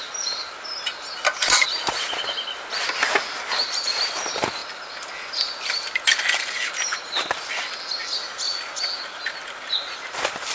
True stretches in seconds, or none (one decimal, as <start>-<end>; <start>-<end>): 0.0-10.5